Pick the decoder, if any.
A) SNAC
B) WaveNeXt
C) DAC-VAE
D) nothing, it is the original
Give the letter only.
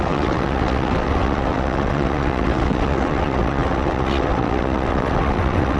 B